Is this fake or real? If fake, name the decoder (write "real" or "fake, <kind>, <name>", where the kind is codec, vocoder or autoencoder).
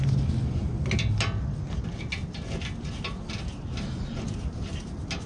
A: real